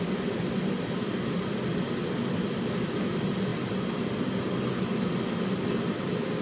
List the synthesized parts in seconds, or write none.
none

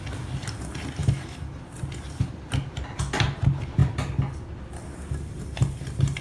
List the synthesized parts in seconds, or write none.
1.0-1.6 (autoencoder, DAC-VAE)